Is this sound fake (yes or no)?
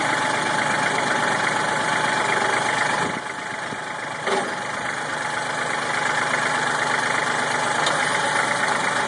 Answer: no